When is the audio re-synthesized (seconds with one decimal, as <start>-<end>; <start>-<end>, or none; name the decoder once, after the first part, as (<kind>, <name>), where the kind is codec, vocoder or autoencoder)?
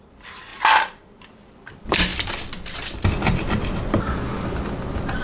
0.0-2.1 (vocoder, BigVGAN v2)